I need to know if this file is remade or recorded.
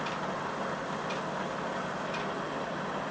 recorded